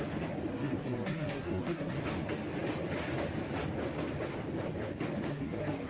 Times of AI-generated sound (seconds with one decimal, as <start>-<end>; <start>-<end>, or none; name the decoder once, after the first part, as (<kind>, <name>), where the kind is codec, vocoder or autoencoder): 0.5-1.9 (codec, SNAC); 5.3-5.9